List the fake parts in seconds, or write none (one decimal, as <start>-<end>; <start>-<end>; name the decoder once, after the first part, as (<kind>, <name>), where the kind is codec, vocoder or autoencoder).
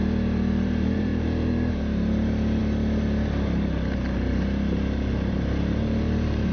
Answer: 0.0-2.6 (vocoder, BigVGAN v2); 5.3-6.5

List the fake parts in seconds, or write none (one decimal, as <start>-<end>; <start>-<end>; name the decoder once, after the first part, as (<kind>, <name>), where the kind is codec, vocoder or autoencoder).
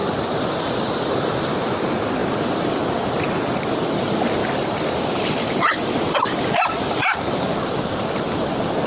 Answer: 2.2-3.6 (vocoder, BigVGAN v2); 4.4-8.9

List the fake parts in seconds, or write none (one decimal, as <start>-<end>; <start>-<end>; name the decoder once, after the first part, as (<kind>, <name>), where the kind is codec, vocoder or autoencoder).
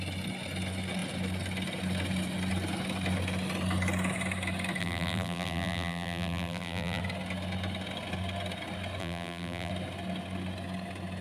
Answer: 4.8-7.0 (vocoder, BigVGAN v2); 9.0-9.7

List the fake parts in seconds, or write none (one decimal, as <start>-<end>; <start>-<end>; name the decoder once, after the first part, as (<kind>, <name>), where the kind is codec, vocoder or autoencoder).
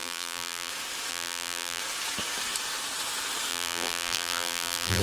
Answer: 0.0-0.7 (vocoder, BigVGAN v2); 1.1-1.8; 3.5-5.0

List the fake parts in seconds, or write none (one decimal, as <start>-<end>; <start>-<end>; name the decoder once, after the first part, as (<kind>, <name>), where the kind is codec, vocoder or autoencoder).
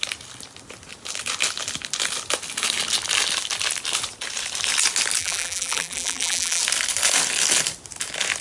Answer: 5.2-6.6 (vocoder, BigVGAN v2)